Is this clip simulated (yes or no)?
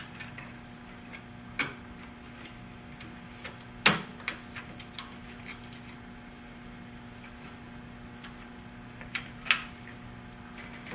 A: no